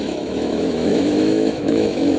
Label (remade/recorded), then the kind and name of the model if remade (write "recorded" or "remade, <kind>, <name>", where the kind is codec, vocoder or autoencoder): remade, autoencoder, DAC-VAE